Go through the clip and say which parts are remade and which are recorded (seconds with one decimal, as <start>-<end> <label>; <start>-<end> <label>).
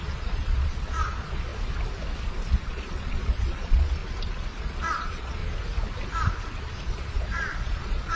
0.0-1.5 remade; 1.5-2.7 recorded; 2.7-4.0 remade; 4.0-4.6 recorded; 4.6-5.4 remade; 5.4-6.6 recorded; 6.6-8.2 remade